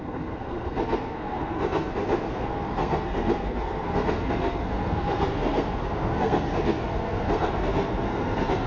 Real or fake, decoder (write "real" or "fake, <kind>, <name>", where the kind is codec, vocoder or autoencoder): fake, codec, SNAC